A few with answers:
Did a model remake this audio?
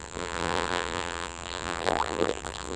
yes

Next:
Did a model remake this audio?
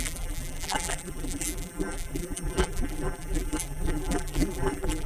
yes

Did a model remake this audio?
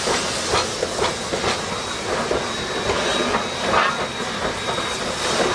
no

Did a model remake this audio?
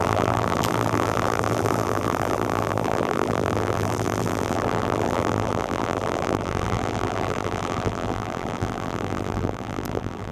yes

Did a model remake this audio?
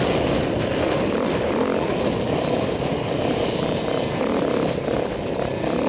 yes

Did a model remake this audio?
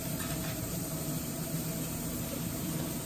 yes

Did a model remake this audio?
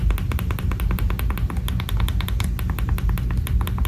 no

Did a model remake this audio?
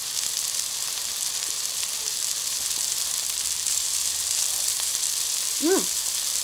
yes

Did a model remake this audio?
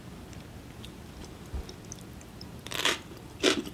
yes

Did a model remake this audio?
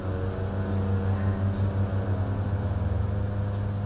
no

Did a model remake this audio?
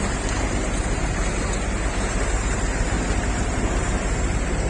yes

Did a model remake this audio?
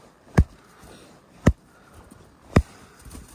no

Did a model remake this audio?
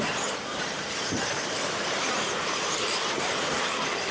yes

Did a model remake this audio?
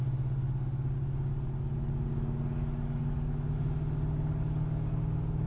no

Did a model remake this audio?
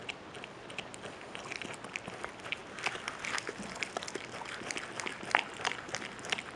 no